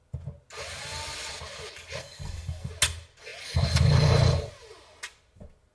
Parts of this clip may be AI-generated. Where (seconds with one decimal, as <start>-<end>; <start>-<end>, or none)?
2.0-2.7